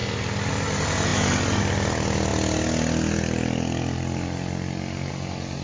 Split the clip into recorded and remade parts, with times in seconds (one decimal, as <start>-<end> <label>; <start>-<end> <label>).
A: 0.0-5.6 recorded